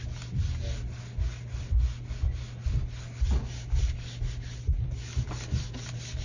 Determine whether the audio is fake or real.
real